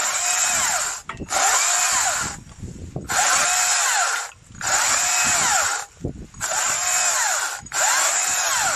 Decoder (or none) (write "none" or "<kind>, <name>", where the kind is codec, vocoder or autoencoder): none